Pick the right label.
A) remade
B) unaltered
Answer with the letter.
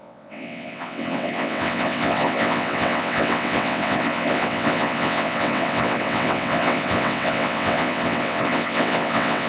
A